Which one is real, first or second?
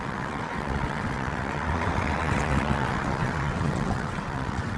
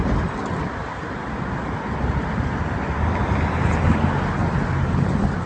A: second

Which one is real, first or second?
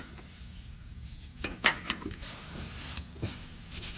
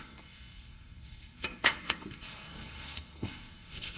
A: first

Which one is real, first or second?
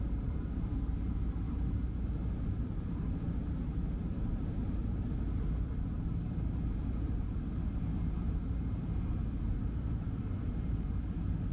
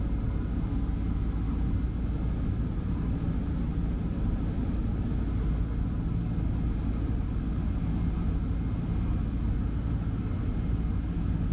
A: second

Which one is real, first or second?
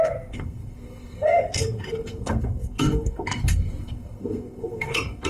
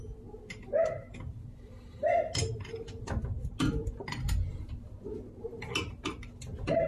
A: second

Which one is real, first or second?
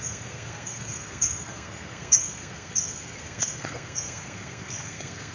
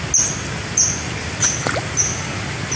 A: second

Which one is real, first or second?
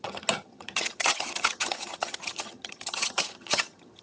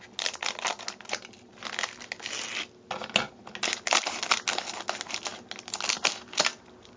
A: second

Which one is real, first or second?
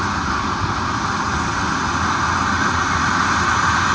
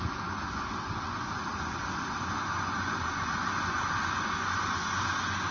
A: first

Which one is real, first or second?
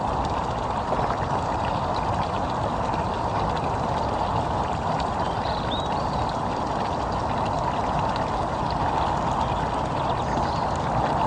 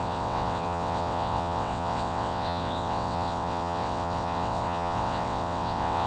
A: first